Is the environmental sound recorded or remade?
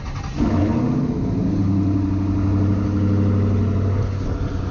recorded